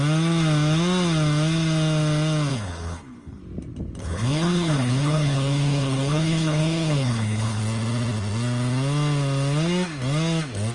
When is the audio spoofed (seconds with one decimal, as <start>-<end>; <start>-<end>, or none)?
2.5-3.4; 4.0-7.6